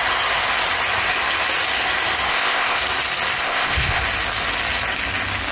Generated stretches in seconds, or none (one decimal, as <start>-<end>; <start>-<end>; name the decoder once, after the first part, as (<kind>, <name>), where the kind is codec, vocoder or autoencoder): 2.3-2.8 (codec, ZipCodec); 3.4-4.0